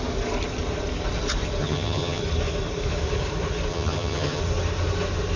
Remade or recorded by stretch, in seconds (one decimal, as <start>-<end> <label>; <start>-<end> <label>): 0.0-1.6 recorded; 1.6-2.2 remade; 2.2-3.7 recorded; 3.7-4.4 remade; 4.4-5.4 recorded